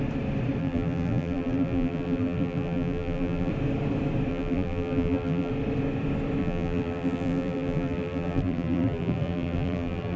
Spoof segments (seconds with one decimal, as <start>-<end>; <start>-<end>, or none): 0.6-3.5; 4.3-5.5; 6.4-10.2